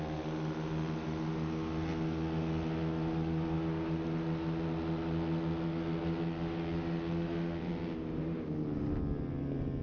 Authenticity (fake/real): real